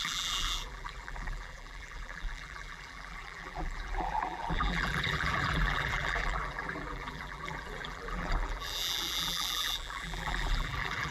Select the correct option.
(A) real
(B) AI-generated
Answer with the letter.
B